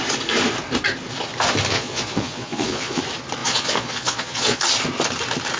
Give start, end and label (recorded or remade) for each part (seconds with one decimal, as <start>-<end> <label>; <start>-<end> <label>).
0.0-1.7 recorded; 1.7-3.0 remade; 3.0-3.4 recorded; 3.4-4.6 remade; 4.6-5.6 recorded